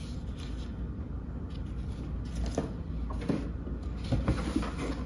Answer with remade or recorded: recorded